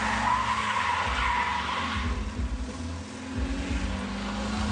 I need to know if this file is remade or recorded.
recorded